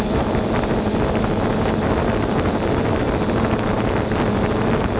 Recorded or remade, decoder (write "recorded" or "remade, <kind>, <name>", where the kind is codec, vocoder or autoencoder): recorded